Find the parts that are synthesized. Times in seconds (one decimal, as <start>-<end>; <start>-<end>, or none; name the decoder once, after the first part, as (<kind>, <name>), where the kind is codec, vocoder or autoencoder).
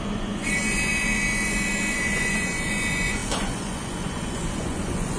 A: 0.0-5.2 (vocoder, Vocos)